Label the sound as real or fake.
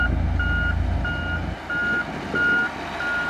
real